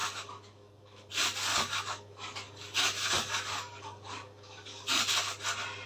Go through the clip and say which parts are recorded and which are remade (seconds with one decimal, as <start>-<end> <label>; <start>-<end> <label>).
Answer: 0.0-1.1 remade; 1.1-1.5 recorded; 1.5-5.0 remade; 5.0-5.9 recorded